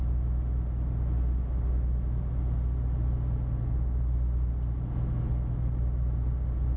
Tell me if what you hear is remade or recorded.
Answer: recorded